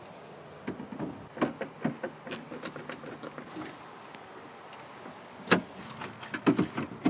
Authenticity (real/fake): real